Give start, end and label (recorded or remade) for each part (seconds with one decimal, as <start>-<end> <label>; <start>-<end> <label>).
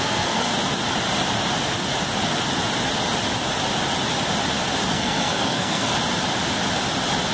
0.0-0.5 remade; 0.5-4.9 recorded; 4.9-5.9 remade; 5.9-7.3 recorded